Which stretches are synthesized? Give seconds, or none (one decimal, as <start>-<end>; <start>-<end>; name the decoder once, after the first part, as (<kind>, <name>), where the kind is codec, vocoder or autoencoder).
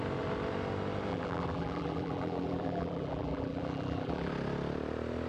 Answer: 1.1-4.3 (vocoder, BigVGAN v2)